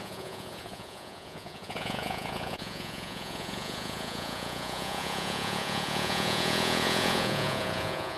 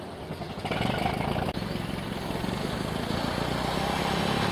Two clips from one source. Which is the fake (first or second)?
first